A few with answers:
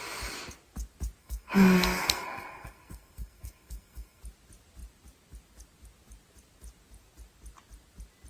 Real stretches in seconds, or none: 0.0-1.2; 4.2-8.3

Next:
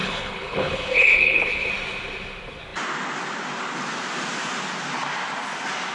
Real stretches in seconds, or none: 1.7-5.9

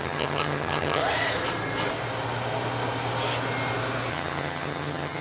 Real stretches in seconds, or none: 1.0-4.1

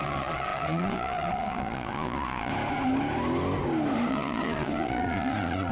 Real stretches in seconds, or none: 2.5-4.1

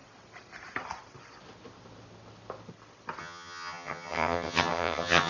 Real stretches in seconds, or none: 0.0-3.2

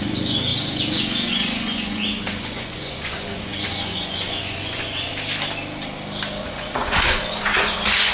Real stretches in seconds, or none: 5.1-6.4

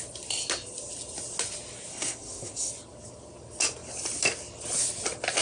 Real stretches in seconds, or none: 0.0-1.9; 2.7-5.4